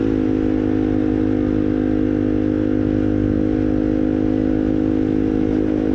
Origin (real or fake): real